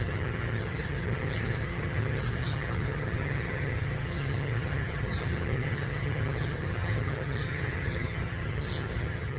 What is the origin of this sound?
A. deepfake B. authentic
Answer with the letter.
A